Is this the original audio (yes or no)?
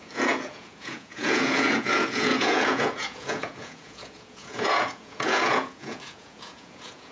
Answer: no